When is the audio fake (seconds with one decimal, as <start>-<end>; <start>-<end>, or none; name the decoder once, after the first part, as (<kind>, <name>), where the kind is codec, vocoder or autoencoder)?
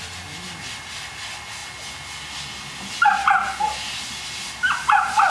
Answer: none